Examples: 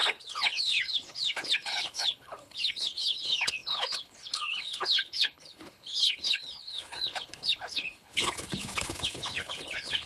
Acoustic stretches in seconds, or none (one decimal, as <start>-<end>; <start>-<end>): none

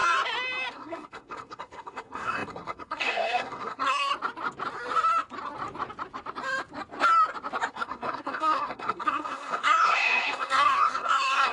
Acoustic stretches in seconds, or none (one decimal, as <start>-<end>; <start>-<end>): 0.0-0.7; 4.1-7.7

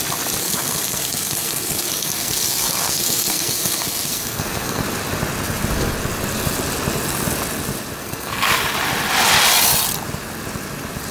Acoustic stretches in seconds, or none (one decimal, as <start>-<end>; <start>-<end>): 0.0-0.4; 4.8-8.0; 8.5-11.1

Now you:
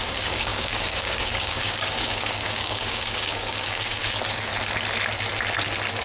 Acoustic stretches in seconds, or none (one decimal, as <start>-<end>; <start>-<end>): 4.0-6.0

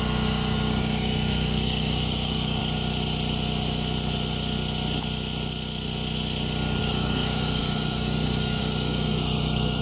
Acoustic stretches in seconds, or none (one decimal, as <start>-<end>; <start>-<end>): 2.6-6.8

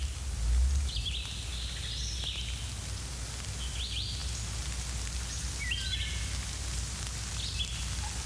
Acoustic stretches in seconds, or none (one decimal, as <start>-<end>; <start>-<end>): 0.0-8.3

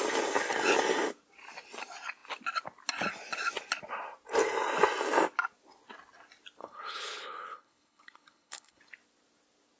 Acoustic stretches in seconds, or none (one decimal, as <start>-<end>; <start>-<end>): 0.0-6.6; 8.8-9.8